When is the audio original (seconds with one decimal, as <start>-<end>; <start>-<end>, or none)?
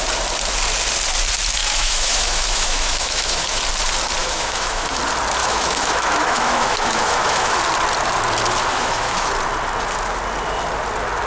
0.0-1.6; 3.6-4.2; 5.0-5.4; 7.6-8.7; 9.3-11.3